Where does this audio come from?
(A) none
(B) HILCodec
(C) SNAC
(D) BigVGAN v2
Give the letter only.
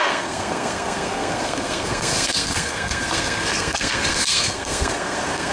C